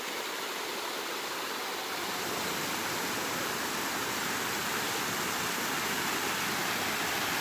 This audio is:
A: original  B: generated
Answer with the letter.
A